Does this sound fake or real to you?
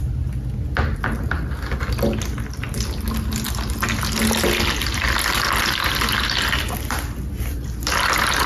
real